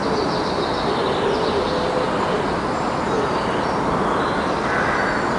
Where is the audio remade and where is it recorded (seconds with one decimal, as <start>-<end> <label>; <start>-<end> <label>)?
0.0-5.4 recorded